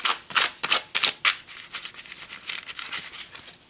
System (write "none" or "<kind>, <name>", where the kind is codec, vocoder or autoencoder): none